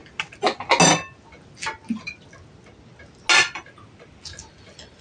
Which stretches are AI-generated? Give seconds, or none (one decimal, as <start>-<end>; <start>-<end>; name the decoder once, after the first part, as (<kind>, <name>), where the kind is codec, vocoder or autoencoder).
none

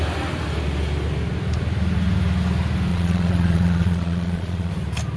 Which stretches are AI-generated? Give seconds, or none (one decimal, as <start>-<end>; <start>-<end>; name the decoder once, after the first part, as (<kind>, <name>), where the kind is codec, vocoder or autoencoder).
2.9-4.7 (vocoder, Vocos)

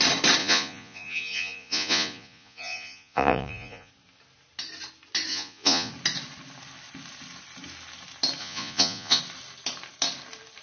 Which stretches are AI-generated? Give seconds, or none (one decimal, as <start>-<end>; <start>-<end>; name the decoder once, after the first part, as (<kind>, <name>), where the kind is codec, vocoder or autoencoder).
0.4-3.9 (vocoder, Vocos); 5.3-5.9; 8.4-9.2

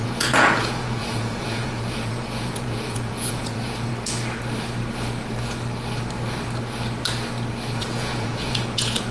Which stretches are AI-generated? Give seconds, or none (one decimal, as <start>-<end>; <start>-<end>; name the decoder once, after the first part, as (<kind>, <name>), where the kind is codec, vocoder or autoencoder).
0.0-3.9 (vocoder, Vocos); 7.8-9.1

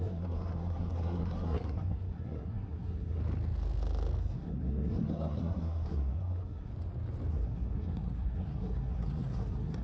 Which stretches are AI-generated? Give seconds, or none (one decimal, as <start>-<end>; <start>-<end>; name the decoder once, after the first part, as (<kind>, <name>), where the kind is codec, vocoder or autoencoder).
0.0-3.2 (codec, SNAC); 4.2-6.7; 7.3-9.8

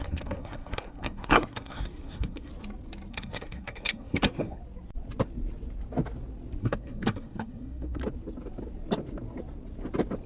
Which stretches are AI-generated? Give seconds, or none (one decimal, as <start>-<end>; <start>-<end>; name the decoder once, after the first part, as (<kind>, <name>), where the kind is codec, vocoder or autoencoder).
0.0-2.5 (codec, SNAC); 3.1-4.6; 6.6-8.0

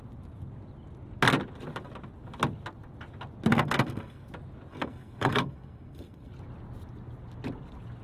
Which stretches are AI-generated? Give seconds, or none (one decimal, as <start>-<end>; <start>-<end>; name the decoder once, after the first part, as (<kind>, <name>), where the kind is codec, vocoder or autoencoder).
3.5-4.3 (codec, SNAC); 4.7-6.3

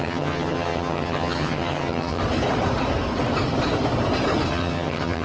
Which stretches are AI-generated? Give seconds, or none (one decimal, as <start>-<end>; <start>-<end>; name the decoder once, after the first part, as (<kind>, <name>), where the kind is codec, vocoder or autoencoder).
0.0-2.2 (vocoder, HiFi-GAN); 4.5-5.2